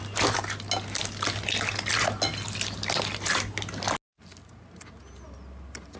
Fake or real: real